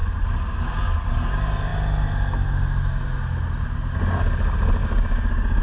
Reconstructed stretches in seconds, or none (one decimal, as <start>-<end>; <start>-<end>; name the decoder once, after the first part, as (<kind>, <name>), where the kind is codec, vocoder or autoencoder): 4.8-5.6 (codec, DAC)